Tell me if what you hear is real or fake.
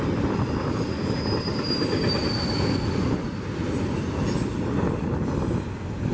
real